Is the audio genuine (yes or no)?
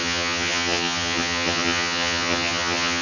no